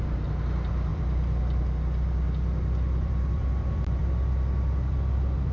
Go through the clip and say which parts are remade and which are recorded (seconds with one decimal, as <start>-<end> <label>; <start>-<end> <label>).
0.0-0.9 recorded; 0.9-4.0 remade; 4.0-5.5 recorded